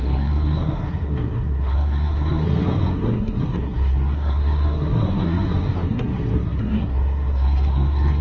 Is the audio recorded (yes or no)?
no